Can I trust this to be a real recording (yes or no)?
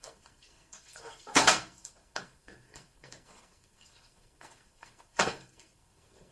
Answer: no